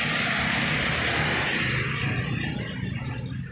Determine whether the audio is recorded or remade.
recorded